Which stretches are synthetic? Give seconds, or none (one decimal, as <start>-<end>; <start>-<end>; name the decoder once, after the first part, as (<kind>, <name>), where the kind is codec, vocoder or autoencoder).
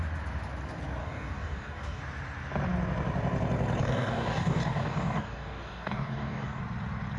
1.0-2.0 (codec, DAC); 3.8-6.6